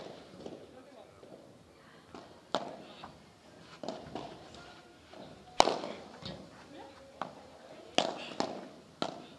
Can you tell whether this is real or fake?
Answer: real